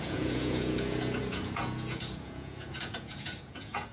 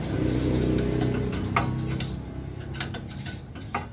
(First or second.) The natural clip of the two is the second